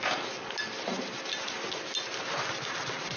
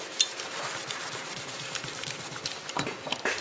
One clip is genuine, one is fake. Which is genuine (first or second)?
first